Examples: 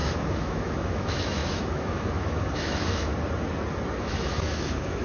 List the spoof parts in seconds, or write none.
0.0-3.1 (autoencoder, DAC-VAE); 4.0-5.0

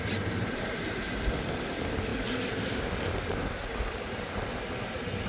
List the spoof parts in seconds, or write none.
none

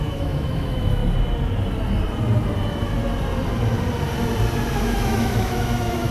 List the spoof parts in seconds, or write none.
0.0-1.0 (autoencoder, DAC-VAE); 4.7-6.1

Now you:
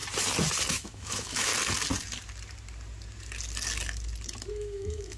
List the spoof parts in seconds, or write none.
0.7-1.5 (autoencoder, DAC-VAE); 4.5-5.2

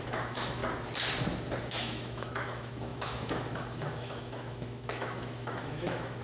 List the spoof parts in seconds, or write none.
0.0-0.6 (autoencoder, DAC-VAE); 1.6-6.2

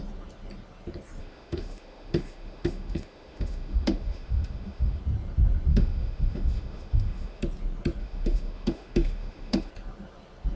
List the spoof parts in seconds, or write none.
1.2-5.0 (autoencoder, DAC-VAE); 5.7-7.4; 8.0-9.7